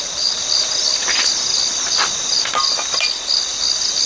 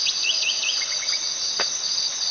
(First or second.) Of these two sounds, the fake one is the second